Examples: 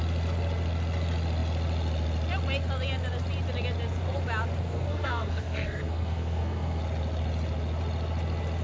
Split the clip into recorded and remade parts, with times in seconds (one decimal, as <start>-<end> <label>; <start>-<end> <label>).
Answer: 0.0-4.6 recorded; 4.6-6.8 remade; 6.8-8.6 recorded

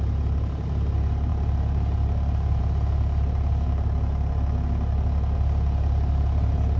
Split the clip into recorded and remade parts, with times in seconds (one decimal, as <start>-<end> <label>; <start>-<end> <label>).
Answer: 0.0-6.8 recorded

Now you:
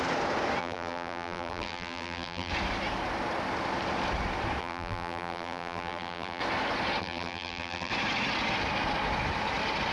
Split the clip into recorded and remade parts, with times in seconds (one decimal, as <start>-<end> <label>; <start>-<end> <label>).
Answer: 0.0-0.6 recorded; 0.6-2.5 remade; 2.5-4.6 recorded; 4.6-6.4 remade; 6.4-7.0 recorded; 7.0-7.9 remade; 7.9-9.9 recorded